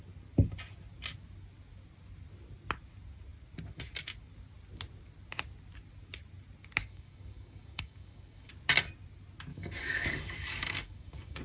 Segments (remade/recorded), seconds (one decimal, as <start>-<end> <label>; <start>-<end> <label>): 0.0-6.8 recorded; 6.8-8.5 remade; 8.5-9.5 recorded; 9.5-11.4 remade